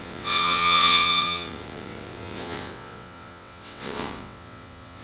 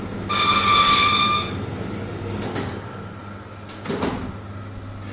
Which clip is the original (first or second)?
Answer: second